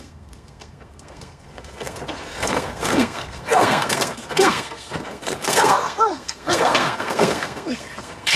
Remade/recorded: remade